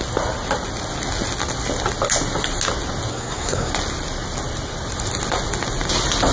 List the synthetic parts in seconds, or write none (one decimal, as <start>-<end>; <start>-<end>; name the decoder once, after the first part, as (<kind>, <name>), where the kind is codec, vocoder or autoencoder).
3.1-3.7 (codec, SNAC)